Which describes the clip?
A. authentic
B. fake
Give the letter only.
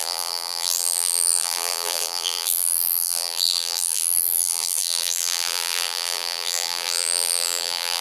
B